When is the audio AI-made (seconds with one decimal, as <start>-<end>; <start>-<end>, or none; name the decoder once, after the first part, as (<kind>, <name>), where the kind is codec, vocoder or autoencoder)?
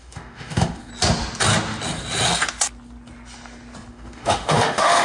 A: 0.0-0.9 (autoencoder, DAC-VAE); 3.9-5.0